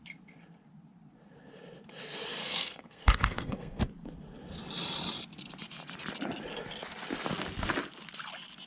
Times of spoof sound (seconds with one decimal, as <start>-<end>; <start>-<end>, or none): 2.4-3.8